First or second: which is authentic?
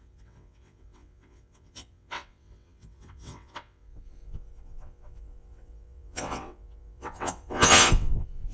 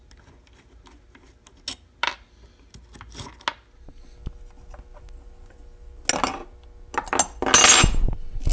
second